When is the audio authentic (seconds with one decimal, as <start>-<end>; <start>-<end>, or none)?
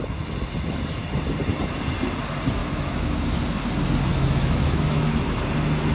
0.0-2.6; 3.1-4.1; 5.2-5.9